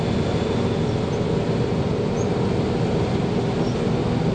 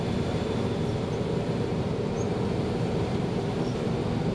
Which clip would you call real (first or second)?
first